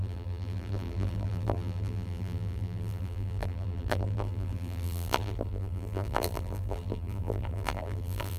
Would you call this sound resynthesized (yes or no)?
yes